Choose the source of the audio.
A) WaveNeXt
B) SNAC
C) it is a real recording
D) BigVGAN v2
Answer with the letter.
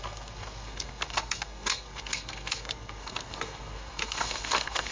B